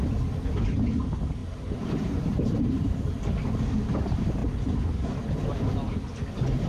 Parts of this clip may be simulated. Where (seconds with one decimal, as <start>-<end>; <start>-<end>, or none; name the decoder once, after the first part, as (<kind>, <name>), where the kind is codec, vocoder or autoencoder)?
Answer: 1.4-3.2 (vocoder, BigVGAN v2)